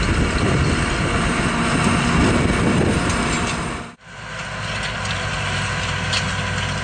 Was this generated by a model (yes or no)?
no